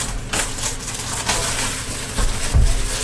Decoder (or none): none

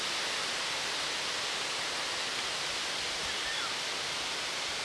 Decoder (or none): none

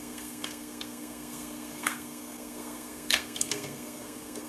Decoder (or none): codec, SNAC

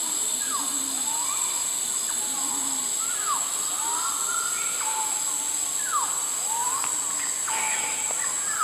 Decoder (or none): none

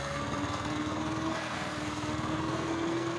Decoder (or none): codec, SNAC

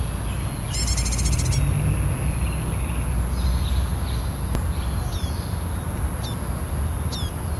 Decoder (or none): none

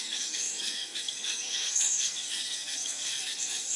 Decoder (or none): codec, SNAC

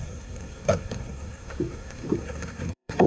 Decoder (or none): codec, SNAC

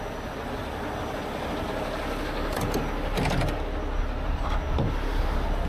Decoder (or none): none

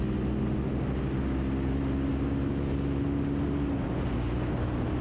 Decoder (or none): none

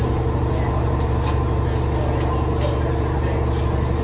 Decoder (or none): none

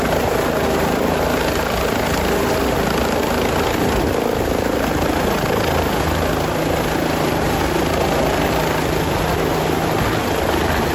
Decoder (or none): none